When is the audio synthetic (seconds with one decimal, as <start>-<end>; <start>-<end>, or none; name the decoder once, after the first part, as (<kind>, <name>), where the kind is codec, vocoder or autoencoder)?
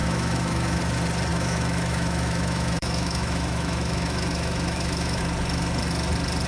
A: 0.0-0.8 (autoencoder, DAC-VAE); 1.3-5.2